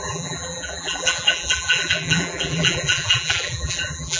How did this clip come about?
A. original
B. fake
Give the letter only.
B